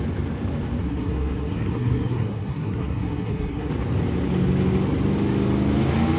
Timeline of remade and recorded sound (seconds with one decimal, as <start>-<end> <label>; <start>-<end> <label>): 0.0-0.8 recorded; 0.8-3.7 remade; 3.7-6.2 recorded